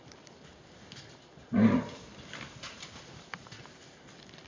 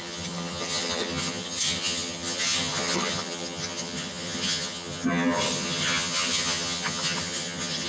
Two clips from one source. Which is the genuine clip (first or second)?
first